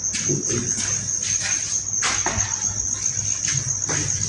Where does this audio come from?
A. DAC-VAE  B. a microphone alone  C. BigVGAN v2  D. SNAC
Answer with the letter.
B